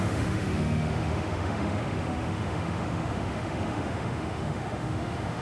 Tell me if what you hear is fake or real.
fake